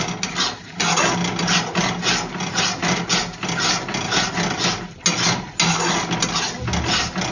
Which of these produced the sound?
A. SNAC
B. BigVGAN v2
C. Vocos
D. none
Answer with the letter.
D